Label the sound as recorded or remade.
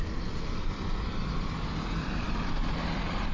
recorded